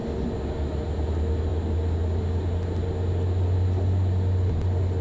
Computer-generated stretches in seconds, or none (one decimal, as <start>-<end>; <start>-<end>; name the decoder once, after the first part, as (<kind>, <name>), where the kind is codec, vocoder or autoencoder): none